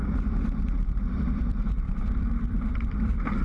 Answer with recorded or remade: remade